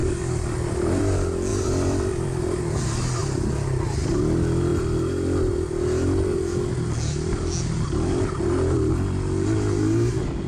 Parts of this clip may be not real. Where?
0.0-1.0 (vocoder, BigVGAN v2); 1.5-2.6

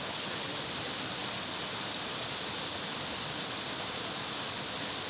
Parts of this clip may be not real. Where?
none

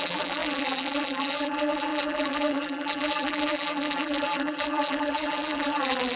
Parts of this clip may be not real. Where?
0.0-6.2 (vocoder, BigVGAN v2)

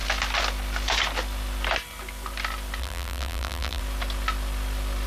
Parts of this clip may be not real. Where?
2.8-3.8 (vocoder, BigVGAN v2)